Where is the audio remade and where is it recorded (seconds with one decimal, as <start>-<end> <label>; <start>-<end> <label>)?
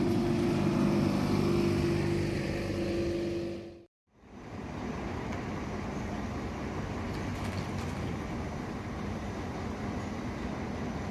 0.0-11.1 recorded